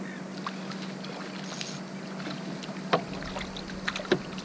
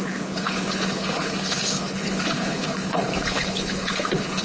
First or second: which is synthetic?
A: second